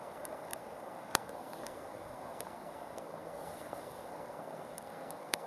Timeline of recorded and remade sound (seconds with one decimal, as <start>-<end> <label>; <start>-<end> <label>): 0.0-5.5 remade

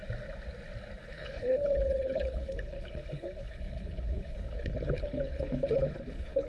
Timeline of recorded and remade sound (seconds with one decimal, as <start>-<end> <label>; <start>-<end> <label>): 0.0-1.0 recorded; 1.0-6.5 remade

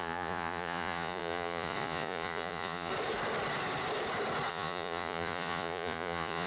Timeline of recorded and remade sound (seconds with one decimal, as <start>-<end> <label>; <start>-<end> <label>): 0.0-2.9 remade; 2.9-4.5 recorded; 4.5-6.5 remade

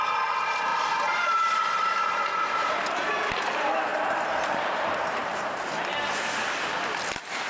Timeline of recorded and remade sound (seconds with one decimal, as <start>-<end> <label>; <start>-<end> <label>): 0.0-0.7 recorded; 0.7-3.1 remade; 3.1-3.9 recorded; 3.9-5.7 remade; 5.7-7.5 recorded

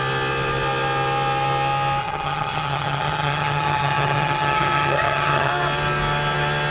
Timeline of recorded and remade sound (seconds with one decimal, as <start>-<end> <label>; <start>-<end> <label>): 0.0-2.0 recorded; 2.0-5.5 remade; 5.5-6.7 recorded

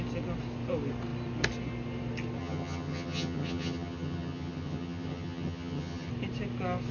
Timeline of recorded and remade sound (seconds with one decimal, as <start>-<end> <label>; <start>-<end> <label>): 0.0-2.4 recorded; 2.4-6.1 remade; 6.1-6.9 recorded

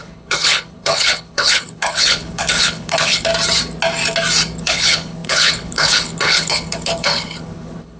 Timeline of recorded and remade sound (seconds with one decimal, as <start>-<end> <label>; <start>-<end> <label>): 0.0-3.3 remade; 3.3-4.6 recorded; 4.6-8.0 remade